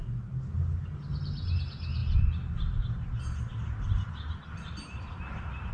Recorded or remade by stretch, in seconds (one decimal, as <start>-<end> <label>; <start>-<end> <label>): 0.0-5.7 recorded